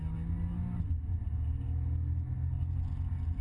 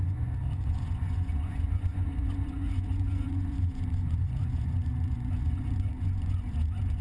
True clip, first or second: first